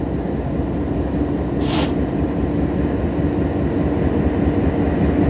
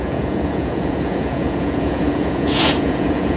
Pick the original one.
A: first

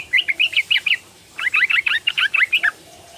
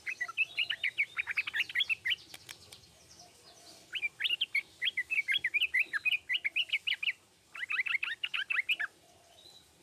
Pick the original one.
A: second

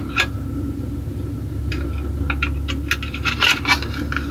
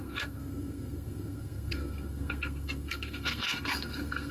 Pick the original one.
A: first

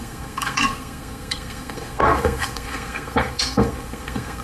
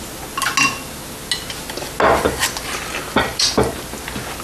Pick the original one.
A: second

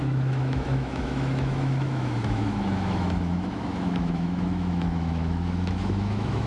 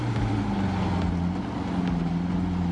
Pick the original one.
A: second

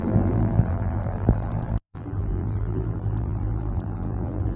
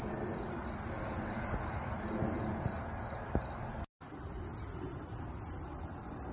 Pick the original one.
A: second